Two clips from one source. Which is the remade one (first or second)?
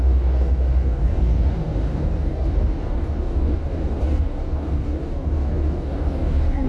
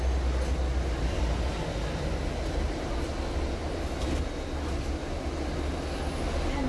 first